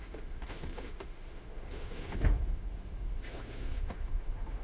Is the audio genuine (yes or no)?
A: no